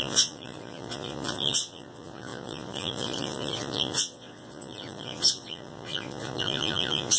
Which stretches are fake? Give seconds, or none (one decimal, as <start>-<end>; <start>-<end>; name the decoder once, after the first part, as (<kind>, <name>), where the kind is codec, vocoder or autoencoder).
0.0-7.2 (vocoder, Vocos)